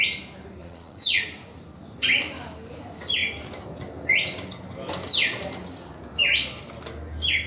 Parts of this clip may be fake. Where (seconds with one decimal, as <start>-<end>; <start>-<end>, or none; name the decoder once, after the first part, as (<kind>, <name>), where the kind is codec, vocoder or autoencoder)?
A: 0.6-1.2 (vocoder, Vocos)